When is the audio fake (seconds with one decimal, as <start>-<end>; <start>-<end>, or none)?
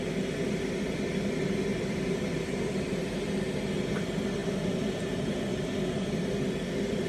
1.7-3.4; 4.4-5.4